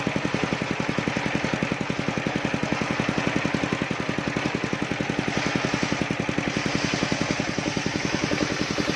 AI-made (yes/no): no